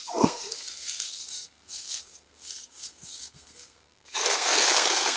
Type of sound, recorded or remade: remade